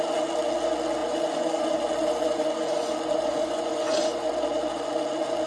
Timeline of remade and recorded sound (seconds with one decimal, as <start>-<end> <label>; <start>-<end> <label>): 0.0-1.0 recorded; 1.0-4.3 remade; 4.3-5.5 recorded